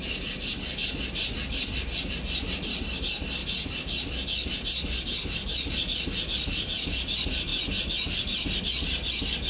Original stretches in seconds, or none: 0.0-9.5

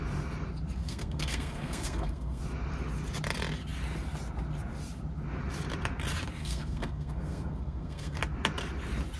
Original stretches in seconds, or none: 0.0-0.8; 2.4-6.4; 8.2-9.2

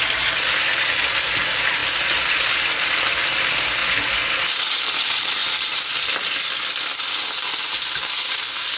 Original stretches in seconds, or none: 1.8-2.3; 3.8-4.7

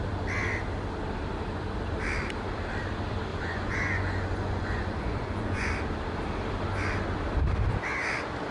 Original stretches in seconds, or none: 0.0-3.3; 5.7-8.5

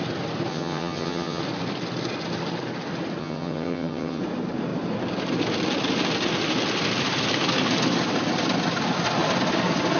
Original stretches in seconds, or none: 0.0-0.5; 1.4-3.2; 4.2-10.0

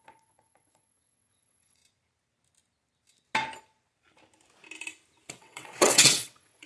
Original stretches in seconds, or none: 1.8-5.3

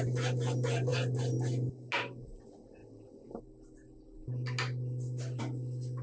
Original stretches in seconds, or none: 0.0-6.0